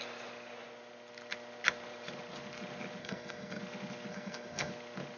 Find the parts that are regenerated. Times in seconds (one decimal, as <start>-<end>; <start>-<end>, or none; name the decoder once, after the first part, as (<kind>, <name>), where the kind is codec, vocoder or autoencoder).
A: 3.0-3.6 (codec, SNAC); 4.1-4.7